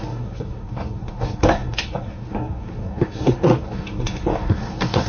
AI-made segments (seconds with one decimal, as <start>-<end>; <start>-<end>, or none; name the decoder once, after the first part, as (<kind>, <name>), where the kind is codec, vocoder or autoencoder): 0.0-5.1 (codec, SNAC)